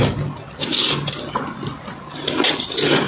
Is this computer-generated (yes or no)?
no